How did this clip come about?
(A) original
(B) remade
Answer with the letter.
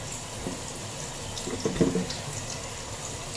A